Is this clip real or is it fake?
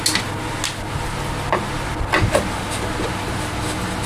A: real